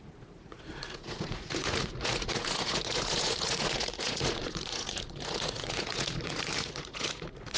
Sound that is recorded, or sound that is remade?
remade